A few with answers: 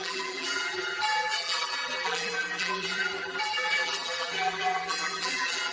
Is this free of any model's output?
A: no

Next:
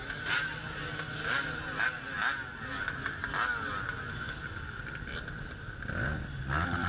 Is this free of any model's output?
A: yes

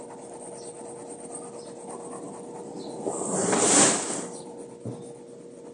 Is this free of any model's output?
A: no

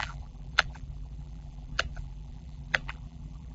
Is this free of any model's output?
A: no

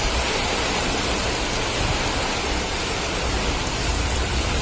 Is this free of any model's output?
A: yes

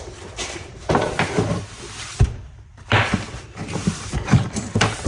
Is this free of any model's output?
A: no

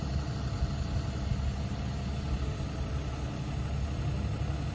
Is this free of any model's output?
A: yes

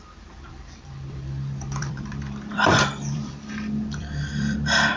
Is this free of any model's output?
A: no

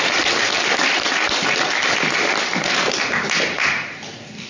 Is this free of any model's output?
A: no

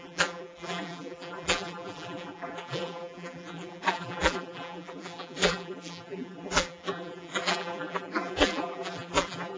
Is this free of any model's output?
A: no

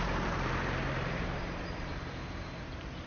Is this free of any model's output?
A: no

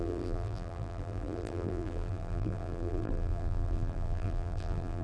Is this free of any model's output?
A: no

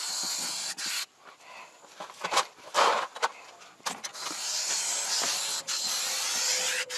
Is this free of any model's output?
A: no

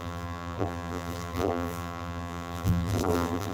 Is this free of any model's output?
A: no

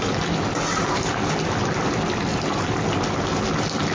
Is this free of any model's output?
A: yes